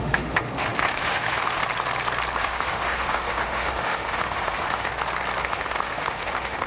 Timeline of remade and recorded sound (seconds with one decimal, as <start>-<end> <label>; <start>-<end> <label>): 0.0-1.6 remade; 1.6-2.4 recorded; 2.4-4.9 remade; 4.9-5.4 recorded; 5.4-6.7 remade